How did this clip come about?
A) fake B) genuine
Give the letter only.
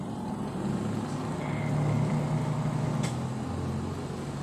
B